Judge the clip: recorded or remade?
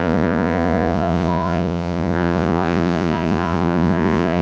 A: remade